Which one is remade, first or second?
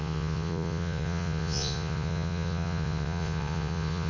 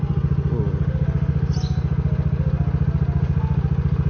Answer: first